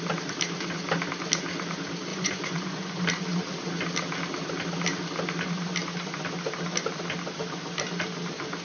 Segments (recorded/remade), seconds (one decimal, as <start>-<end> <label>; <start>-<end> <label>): 0.0-2.1 recorded; 2.1-3.0 remade; 3.0-8.6 recorded